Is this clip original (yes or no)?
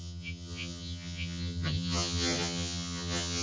no